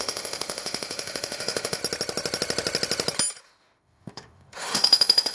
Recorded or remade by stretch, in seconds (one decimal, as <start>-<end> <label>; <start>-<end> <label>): 0.0-1.8 remade; 1.8-3.4 recorded; 3.4-5.3 remade